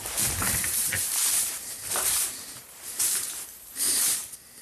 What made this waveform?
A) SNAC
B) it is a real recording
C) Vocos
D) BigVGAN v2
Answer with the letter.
D